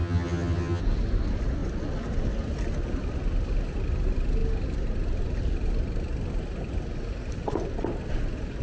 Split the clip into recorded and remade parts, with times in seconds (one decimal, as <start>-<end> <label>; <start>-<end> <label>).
0.0-0.8 remade; 0.8-8.6 recorded

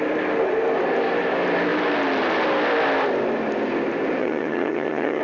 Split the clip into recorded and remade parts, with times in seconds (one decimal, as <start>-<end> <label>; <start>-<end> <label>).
0.0-4.2 recorded; 4.2-5.2 remade

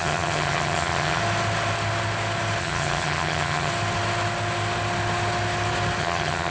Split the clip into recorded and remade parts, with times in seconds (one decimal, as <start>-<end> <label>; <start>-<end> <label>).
0.0-1.2 remade; 1.2-2.6 recorded; 2.6-3.7 remade; 3.7-6.0 recorded; 6.0-6.5 remade

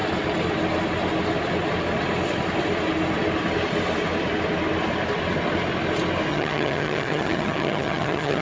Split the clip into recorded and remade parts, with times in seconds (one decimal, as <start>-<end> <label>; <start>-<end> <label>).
0.0-6.3 recorded; 6.3-8.4 remade

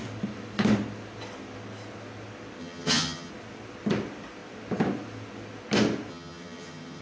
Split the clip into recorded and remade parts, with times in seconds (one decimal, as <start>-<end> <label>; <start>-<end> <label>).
0.0-2.6 recorded; 2.6-3.3 remade; 3.3-6.1 recorded; 6.1-7.0 remade